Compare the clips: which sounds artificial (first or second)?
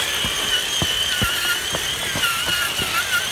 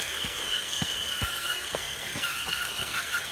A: second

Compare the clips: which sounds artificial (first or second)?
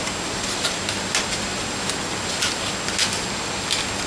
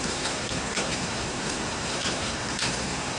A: second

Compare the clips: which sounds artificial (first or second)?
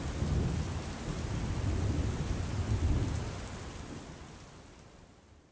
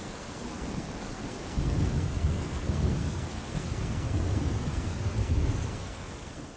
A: second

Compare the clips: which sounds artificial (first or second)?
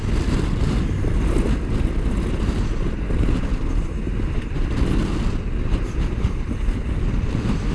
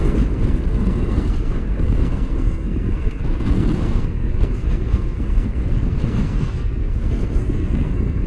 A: second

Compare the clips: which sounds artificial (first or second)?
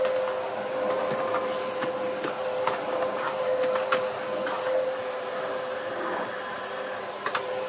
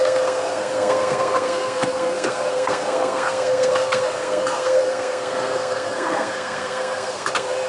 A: second